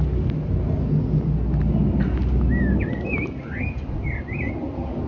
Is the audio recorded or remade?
recorded